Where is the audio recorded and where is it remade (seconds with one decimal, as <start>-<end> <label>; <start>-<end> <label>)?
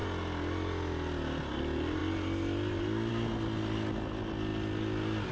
0.0-5.3 recorded